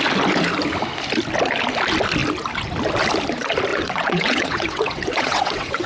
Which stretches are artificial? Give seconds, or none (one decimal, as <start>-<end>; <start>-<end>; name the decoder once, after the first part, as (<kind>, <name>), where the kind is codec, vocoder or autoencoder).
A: 3.7-5.9 (vocoder, WaveNeXt)